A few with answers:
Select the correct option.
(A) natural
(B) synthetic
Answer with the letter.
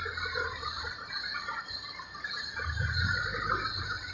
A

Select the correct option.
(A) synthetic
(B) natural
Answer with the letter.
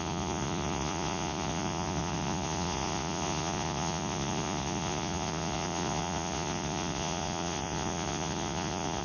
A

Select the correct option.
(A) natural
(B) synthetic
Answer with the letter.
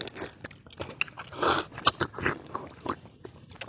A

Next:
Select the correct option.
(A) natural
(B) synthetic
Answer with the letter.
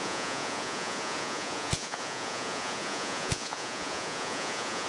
B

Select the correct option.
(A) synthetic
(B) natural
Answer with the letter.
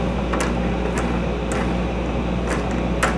B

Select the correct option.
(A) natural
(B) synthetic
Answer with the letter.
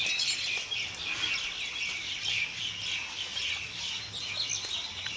A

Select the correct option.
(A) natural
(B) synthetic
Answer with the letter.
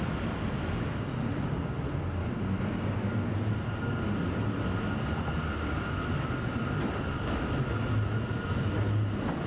A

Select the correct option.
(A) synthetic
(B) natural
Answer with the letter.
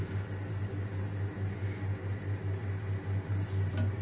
B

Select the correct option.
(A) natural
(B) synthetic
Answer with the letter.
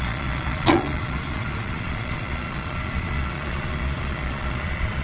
B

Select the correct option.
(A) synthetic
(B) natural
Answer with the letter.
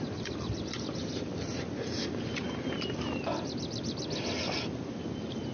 B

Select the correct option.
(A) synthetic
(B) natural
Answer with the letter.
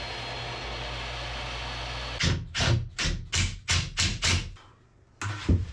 B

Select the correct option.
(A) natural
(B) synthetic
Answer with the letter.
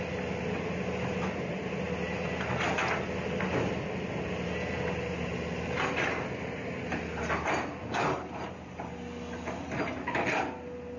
A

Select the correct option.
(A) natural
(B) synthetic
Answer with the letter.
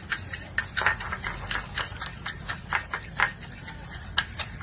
A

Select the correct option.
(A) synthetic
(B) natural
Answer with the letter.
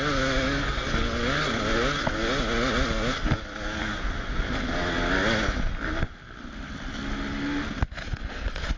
B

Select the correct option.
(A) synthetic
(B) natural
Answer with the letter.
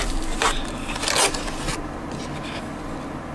B